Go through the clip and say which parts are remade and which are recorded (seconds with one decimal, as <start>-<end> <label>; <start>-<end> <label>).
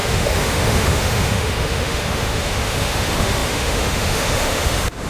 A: 0.0-5.1 remade